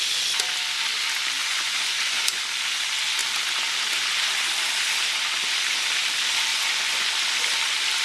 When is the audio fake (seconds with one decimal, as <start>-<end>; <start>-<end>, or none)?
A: 1.4-2.4; 6.5-7.1